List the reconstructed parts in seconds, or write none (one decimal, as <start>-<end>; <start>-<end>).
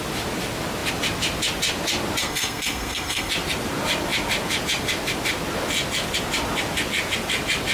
2.2-3.3